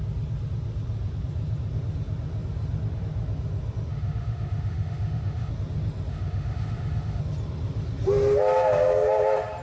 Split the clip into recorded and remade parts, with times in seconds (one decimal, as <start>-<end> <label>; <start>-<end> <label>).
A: 0.0-3.9 recorded; 3.9-5.5 remade; 5.5-6.1 recorded; 6.1-7.2 remade; 7.2-9.6 recorded